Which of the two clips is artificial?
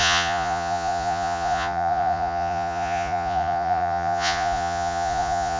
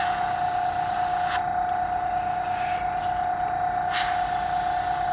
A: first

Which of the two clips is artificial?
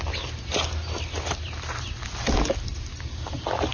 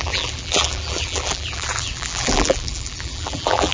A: second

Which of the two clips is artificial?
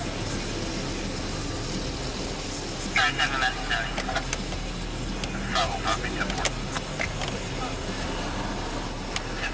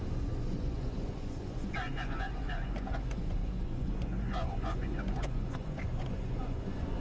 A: second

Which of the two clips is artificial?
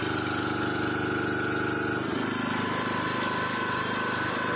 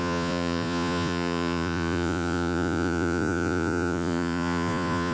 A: second